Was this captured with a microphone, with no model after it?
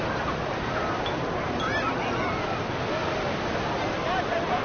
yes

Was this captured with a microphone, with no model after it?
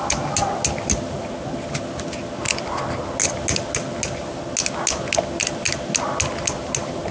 yes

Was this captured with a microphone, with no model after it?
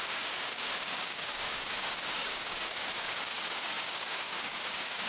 no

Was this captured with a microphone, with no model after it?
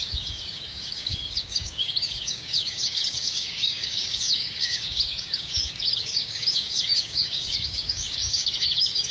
no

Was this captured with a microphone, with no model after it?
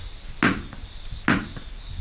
yes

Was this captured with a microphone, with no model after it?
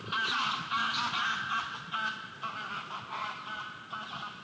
yes